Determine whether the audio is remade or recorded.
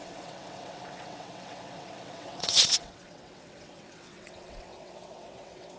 remade